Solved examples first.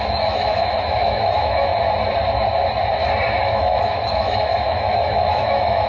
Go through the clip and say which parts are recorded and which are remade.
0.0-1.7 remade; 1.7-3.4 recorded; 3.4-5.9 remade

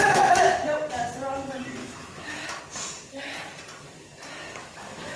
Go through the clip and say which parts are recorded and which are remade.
0.0-1.8 recorded; 1.8-2.6 remade; 2.6-4.6 recorded; 4.6-5.2 remade

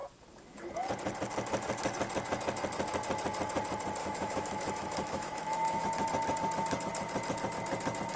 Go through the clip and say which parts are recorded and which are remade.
0.0-0.6 remade; 0.6-4.0 recorded; 4.0-5.8 remade; 5.8-8.2 recorded

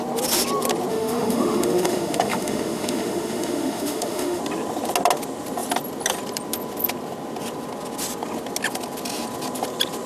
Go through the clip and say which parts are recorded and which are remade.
0.0-0.9 recorded; 0.9-4.4 remade; 4.4-10.1 recorded